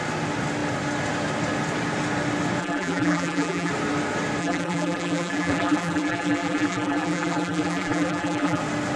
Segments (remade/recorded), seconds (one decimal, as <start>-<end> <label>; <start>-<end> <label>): 0.0-2.6 recorded; 2.6-3.7 remade; 3.7-4.4 recorded; 4.4-8.6 remade; 8.6-9.0 recorded